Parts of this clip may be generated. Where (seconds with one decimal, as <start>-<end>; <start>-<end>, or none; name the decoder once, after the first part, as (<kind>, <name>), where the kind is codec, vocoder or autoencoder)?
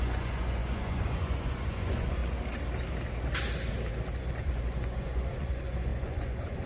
0.0-2.2 (vocoder, Vocos); 4.2-6.7